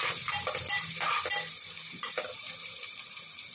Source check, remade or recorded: remade